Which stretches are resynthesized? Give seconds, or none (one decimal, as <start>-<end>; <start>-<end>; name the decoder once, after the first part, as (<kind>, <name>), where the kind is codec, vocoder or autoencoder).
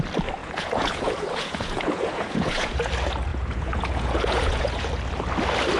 0.4-2.9 (vocoder, Vocos); 3.3-4.9